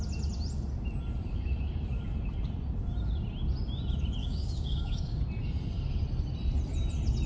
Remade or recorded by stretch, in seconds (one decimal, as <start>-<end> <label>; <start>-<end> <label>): 0.0-4.2 recorded; 4.2-5.2 remade; 5.2-7.3 recorded